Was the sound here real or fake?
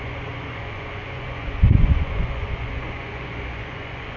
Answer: fake